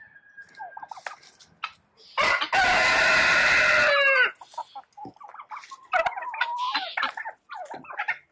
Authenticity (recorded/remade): recorded